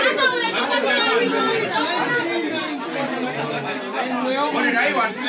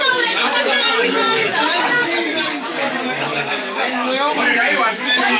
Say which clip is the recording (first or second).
first